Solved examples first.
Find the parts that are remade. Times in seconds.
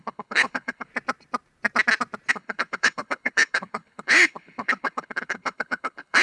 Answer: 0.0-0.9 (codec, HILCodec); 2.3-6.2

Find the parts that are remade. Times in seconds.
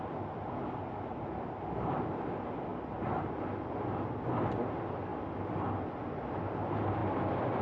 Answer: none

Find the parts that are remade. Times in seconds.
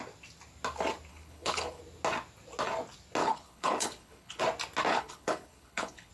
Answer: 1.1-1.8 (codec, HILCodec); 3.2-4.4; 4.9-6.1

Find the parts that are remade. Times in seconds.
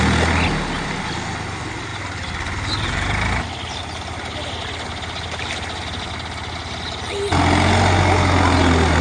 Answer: none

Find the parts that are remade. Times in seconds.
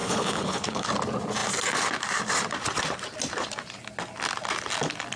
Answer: 0.0-0.9 (codec, HILCodec)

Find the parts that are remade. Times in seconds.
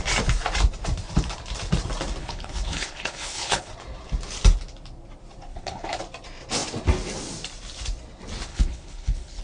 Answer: 2.2-3.7 (codec, HILCodec); 5.5-6.0; 8.5-9.4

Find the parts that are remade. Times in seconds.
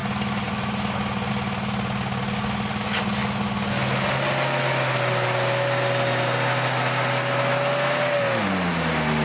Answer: none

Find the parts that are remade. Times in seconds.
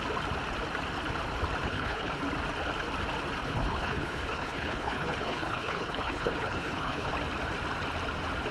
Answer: 1.6-2.2 (codec, HILCodec); 3.4-7.1